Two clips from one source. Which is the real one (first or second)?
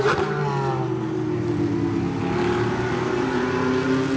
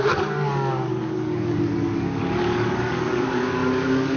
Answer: first